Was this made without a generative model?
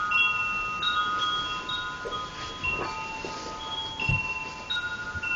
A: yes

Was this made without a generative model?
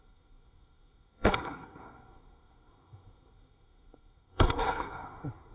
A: no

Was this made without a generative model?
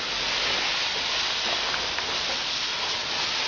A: yes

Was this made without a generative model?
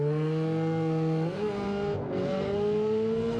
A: no